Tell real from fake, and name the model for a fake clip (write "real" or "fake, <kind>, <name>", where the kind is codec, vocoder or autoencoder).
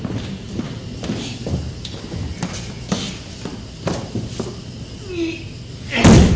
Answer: real